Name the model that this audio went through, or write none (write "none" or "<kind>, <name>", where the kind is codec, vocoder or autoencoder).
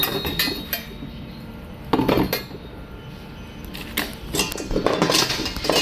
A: none